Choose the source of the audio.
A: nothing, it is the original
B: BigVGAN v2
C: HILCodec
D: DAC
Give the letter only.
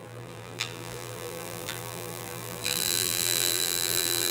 B